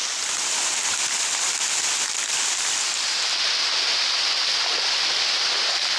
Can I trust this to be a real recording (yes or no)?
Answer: yes